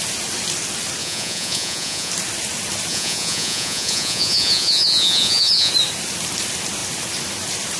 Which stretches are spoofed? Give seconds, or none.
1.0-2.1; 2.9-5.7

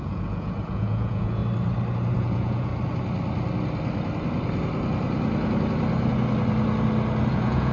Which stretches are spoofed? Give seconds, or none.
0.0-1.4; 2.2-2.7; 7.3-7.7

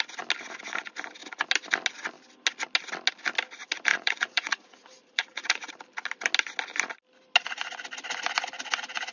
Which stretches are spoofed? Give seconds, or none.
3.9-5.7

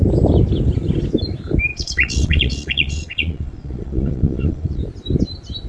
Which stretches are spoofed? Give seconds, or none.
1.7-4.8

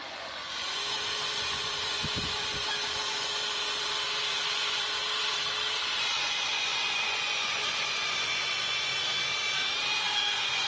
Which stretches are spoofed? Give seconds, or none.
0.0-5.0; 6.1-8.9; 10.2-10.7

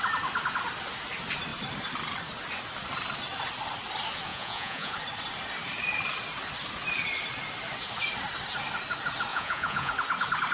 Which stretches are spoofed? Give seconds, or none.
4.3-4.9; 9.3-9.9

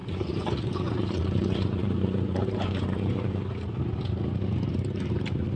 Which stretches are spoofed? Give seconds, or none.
0.0-3.4

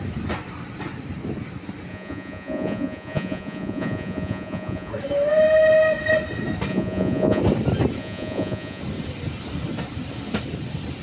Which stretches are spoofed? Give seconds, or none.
1.9-4.9; 6.7-7.4; 8.0-8.8